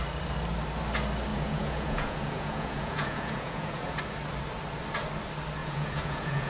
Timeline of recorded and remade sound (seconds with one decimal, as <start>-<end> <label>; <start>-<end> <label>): 0.0-1.3 recorded; 1.3-4.0 remade; 4.0-5.6 recorded; 5.6-6.5 remade